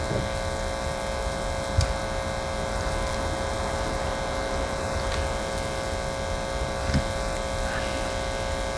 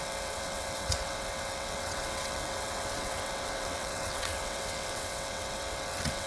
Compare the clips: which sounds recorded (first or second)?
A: first